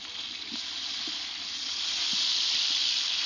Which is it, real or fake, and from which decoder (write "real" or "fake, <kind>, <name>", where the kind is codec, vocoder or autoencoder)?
real